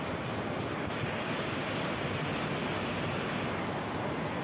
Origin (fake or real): real